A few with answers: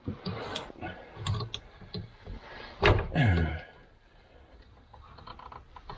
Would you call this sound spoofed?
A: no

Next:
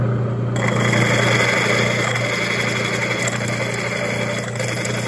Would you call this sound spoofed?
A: no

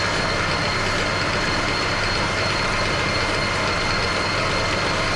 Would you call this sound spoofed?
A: no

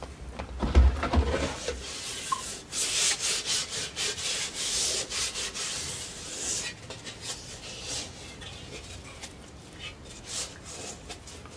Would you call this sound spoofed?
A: no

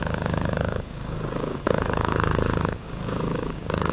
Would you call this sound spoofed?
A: yes